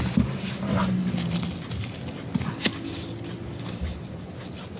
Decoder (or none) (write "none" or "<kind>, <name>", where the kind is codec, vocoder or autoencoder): none